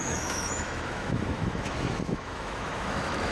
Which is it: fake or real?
fake